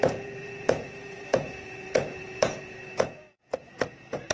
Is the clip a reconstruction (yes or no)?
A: yes